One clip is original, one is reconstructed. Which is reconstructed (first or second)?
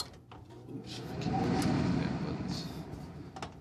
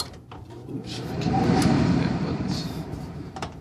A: second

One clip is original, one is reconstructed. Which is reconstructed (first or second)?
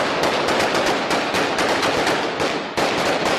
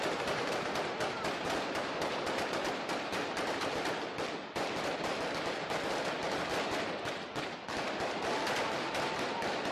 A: second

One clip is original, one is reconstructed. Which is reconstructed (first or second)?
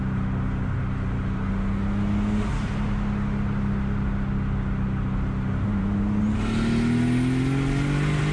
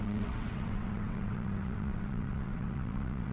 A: second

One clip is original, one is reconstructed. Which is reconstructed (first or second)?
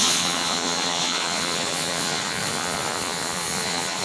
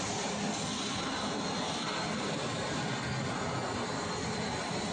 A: first